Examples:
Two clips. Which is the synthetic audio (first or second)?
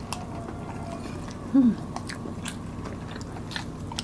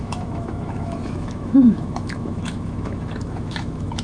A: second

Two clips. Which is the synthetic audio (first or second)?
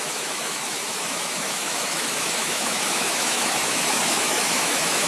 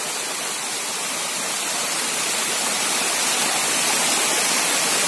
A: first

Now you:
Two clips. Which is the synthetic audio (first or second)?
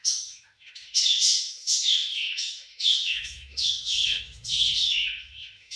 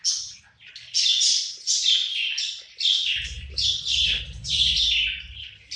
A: first